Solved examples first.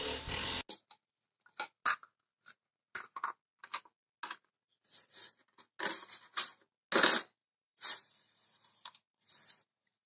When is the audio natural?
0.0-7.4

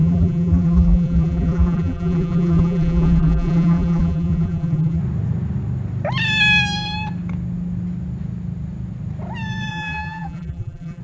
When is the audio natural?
5.0-9.7

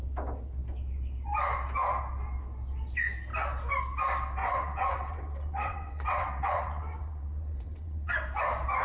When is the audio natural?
0.0-4.4; 8.1-8.8

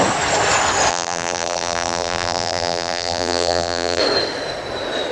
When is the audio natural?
0.0-0.9; 4.0-5.1